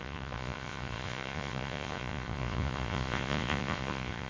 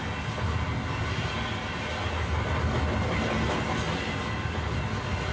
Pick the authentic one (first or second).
second